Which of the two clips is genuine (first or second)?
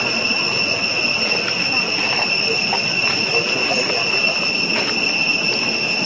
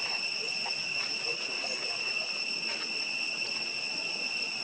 first